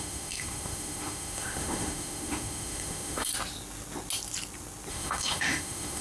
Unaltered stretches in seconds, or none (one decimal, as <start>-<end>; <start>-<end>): 3.3-4.9